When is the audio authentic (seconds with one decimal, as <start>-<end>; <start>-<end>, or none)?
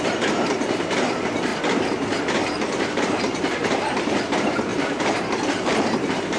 1.5-2.2